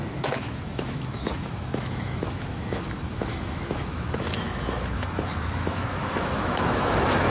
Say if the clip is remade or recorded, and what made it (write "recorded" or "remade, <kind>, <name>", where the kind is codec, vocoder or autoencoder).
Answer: remade, autoencoder, DAC-VAE